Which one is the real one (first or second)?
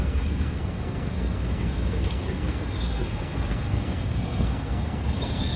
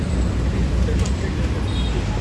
second